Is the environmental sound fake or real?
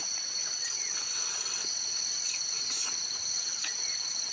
fake